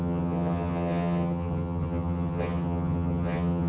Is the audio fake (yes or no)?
yes